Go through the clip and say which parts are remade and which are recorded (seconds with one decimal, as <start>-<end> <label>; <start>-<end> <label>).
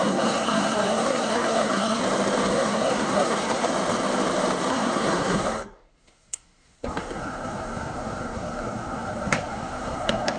0.0-2.0 remade; 2.0-2.5 recorded; 2.5-3.7 remade; 3.7-4.7 recorded; 4.7-10.4 remade